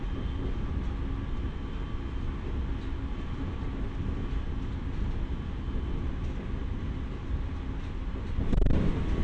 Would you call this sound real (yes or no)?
yes